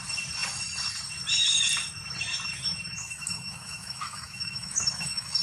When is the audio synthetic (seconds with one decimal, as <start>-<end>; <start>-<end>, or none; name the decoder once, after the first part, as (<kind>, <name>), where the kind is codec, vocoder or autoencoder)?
2.9-5.4 (autoencoder, DAC-VAE)